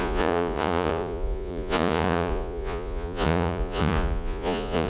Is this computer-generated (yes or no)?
yes